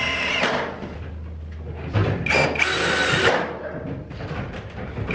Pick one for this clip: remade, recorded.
recorded